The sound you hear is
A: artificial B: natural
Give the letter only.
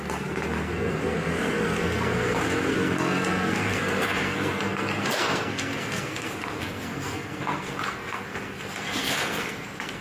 A